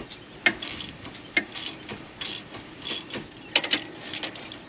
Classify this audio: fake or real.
real